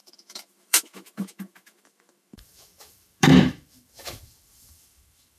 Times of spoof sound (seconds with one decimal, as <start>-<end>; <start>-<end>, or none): 0.0-5.4

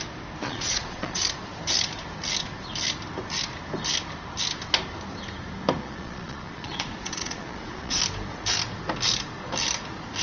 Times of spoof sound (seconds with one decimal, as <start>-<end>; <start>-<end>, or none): 0.4-1.2; 5.8-8.0

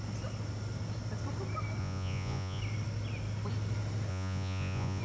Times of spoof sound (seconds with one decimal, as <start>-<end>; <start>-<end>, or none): 1.8-2.6; 4.1-5.0

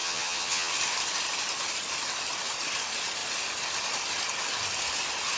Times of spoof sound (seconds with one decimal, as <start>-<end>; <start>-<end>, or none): 0.0-0.7

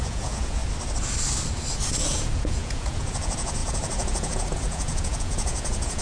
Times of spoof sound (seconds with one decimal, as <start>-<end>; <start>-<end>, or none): 0.0-0.6; 2.0-6.0